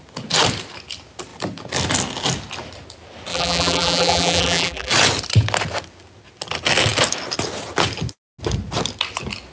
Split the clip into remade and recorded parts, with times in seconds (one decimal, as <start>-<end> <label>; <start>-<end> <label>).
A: 0.0-3.3 recorded; 3.3-4.9 remade; 4.9-9.5 recorded